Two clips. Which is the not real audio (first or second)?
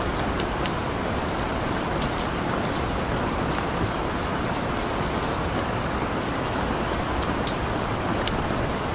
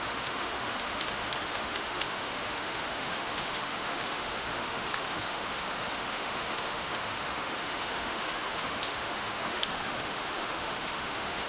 second